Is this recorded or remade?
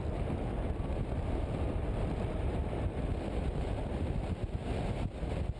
remade